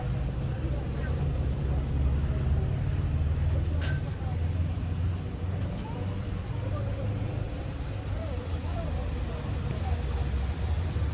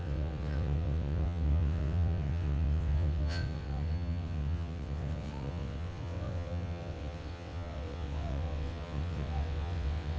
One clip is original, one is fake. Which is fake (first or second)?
second